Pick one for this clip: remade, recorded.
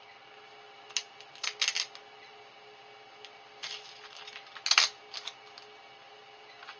recorded